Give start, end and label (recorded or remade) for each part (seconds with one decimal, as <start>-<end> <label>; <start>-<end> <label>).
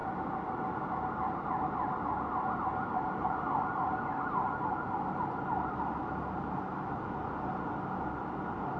0.0-8.8 recorded